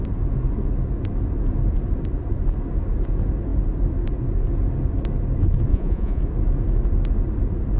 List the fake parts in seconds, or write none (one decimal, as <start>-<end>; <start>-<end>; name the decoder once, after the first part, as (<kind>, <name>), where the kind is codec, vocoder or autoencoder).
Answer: 5.7-6.2 (vocoder, Vocos)